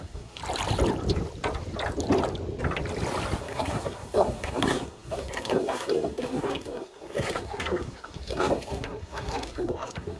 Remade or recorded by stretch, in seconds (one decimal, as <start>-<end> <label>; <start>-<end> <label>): 0.0-0.4 remade; 0.4-3.4 recorded; 3.4-10.2 remade